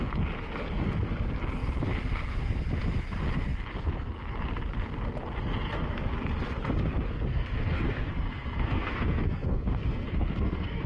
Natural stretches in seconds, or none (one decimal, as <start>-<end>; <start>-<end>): 0.0-7.3